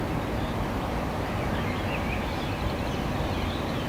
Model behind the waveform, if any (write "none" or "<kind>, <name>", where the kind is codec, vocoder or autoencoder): vocoder, BigVGAN v2